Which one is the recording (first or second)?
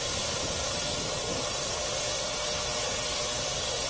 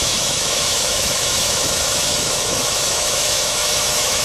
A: first